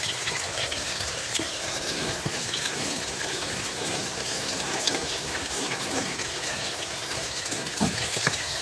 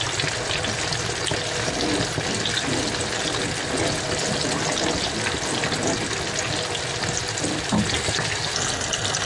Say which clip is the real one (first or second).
second